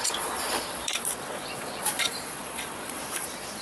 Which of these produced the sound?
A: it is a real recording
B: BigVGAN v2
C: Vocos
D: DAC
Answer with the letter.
C